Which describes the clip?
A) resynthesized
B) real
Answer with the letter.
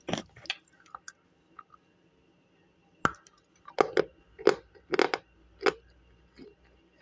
B